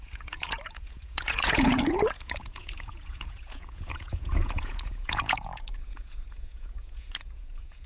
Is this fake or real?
fake